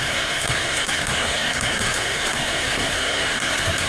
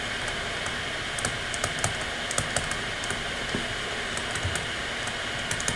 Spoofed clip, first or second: first